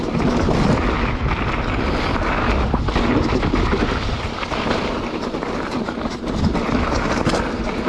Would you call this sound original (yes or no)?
yes